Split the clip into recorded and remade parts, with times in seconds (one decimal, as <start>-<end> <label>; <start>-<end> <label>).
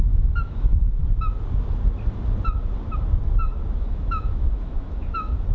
0.0-1.0 remade; 1.0-3.7 recorded; 3.7-5.5 remade